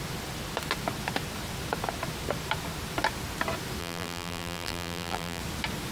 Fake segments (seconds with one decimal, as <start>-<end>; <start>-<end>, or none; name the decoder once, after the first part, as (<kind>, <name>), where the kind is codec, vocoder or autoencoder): 3.8-5.4 (vocoder, BigVGAN v2)